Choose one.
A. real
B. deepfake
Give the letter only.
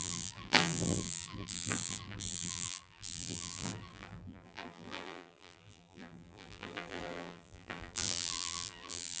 B